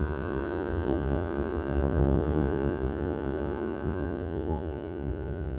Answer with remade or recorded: remade